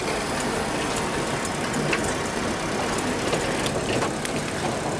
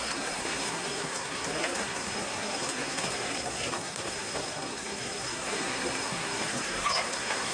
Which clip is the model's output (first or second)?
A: second